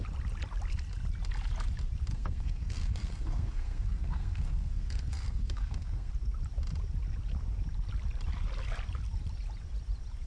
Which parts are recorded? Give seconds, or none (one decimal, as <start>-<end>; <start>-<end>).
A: 0.0-2.1; 6.1-10.3